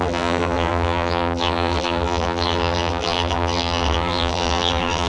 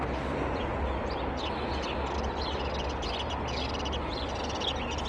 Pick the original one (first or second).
second